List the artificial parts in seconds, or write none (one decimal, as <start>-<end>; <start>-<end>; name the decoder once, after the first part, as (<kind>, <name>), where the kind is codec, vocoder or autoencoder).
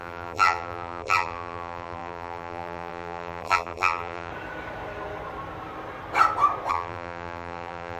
0.0-4.3 (vocoder, BigVGAN v2); 6.7-8.0